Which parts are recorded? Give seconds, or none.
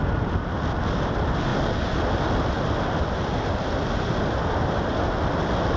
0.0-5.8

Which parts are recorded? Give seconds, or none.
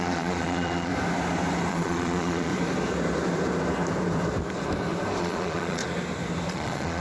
0.9-1.7; 2.5-5.2; 5.8-6.5